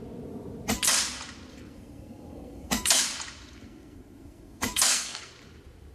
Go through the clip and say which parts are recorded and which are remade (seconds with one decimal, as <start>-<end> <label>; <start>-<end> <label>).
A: 0.0-1.5 recorded; 1.5-3.0 remade; 3.0-3.6 recorded; 3.6-5.3 remade; 5.3-5.9 recorded